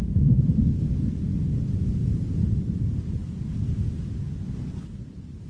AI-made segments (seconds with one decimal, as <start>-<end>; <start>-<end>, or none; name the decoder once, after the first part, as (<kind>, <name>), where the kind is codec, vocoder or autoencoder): none